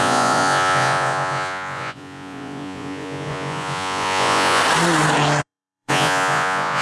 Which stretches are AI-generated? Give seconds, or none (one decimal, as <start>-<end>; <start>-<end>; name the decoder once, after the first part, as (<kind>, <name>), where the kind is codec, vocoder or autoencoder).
0.0-4.6 (vocoder, Vocos); 5.4-6.8

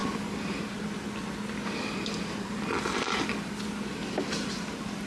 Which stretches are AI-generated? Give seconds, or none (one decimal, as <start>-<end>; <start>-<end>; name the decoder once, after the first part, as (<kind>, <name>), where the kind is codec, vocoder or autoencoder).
none

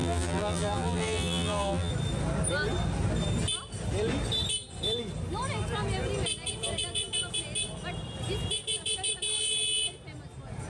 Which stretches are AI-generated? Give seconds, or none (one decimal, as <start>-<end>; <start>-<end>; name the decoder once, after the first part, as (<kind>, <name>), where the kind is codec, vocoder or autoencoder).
0.0-1.9 (vocoder, BigVGAN v2)